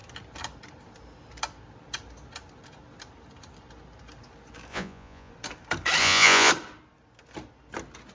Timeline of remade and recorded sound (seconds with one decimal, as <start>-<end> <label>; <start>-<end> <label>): 0.0-4.7 recorded; 4.7-5.3 remade; 5.3-6.0 recorded; 6.0-6.5 remade; 6.5-8.1 recorded